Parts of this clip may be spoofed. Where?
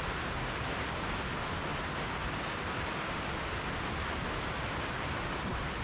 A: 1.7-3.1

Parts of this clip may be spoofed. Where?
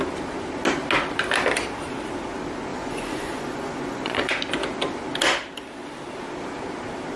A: 2.7-4.3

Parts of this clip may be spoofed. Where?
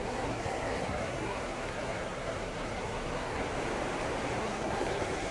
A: 0.0-3.5; 4.4-5.3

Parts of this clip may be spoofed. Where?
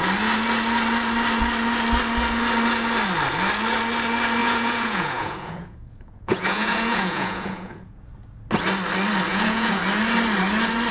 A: 4.4-8.1; 9.3-9.8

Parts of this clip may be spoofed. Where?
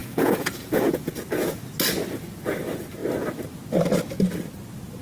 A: 0.0-1.1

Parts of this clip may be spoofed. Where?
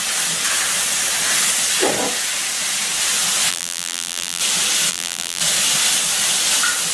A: 3.5-4.4; 4.9-5.4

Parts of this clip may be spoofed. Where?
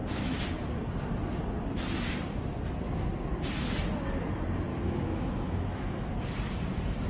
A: 4.7-6.1